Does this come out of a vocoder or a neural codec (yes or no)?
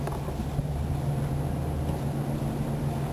no